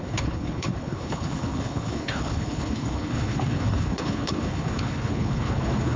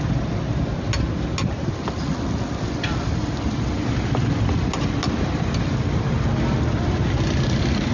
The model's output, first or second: first